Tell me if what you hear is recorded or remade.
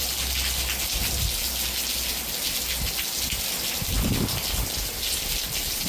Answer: recorded